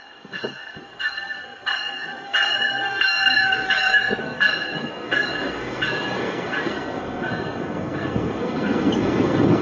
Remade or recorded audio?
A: remade